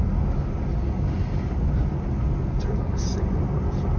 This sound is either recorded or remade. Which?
recorded